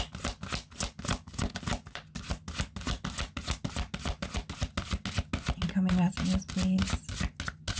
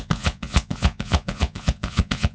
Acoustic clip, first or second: first